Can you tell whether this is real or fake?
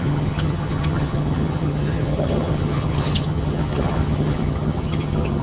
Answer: fake